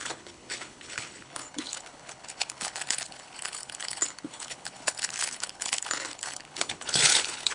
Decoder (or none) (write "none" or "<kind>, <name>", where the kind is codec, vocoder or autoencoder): codec, HILCodec